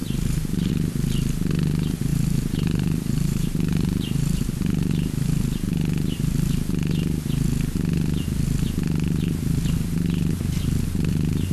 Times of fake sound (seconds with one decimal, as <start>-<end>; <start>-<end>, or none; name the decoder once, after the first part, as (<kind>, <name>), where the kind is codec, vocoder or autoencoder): 0.0-0.7 (vocoder, BigVGAN v2); 2.1-5.4